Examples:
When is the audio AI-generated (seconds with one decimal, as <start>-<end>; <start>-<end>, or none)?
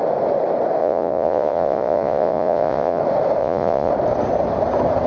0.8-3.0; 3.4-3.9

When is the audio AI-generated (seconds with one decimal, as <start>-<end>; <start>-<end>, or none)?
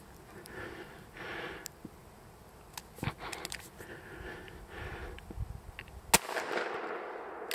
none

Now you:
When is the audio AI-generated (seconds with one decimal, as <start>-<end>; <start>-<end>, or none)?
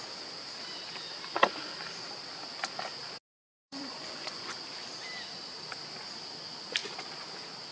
3.5-4.5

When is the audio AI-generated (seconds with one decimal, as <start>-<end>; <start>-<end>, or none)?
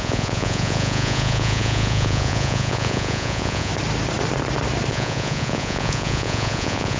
0.0-3.7; 4.9-7.0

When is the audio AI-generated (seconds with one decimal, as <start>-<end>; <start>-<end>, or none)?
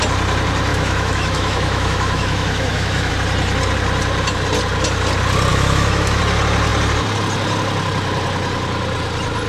0.7-3.1; 5.5-6.2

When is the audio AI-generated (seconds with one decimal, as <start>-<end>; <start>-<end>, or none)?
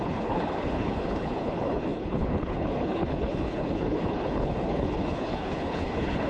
0.0-6.3